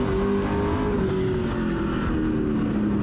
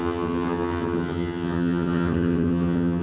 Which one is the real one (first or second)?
first